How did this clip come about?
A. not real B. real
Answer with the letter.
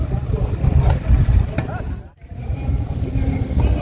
B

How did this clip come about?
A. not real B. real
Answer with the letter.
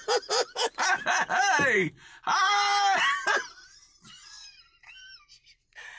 A